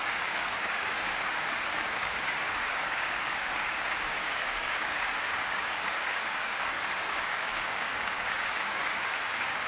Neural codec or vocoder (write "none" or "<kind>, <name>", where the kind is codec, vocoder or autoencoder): codec, DAC